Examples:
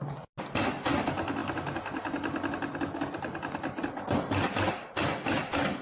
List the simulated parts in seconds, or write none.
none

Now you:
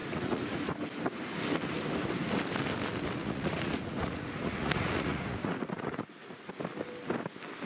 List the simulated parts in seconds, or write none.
0.0-0.6; 3.2-6.5